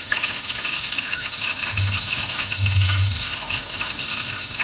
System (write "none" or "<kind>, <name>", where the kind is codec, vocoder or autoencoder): autoencoder, DAC-VAE